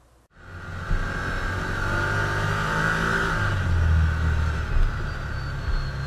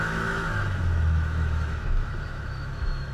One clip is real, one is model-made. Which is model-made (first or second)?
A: second